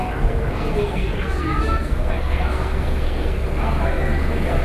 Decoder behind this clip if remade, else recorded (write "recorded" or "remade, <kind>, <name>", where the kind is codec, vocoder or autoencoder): remade, codec, SNAC